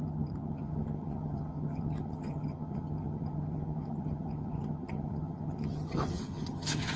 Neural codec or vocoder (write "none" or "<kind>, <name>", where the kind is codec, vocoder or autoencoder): vocoder, HiFi-GAN